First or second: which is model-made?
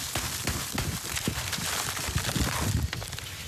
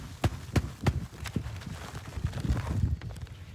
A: first